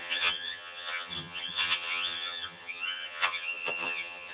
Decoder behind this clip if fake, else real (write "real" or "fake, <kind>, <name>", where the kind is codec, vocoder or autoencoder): fake, vocoder, HiFi-GAN